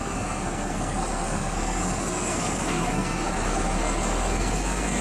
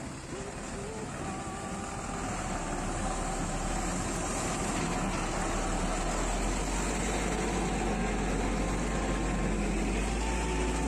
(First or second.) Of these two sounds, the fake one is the first